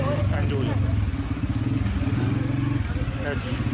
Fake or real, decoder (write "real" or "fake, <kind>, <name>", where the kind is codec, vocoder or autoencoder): real